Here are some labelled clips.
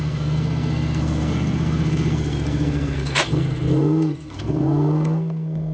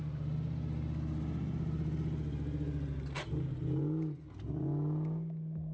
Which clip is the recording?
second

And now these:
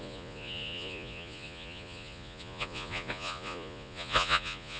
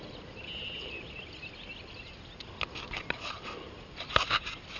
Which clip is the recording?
second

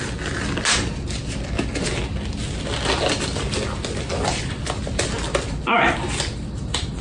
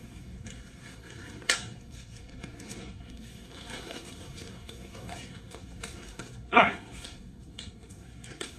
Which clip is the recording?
first